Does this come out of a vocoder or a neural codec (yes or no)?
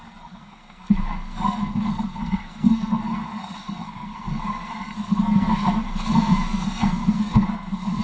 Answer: yes